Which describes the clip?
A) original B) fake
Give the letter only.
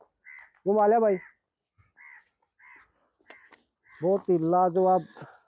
A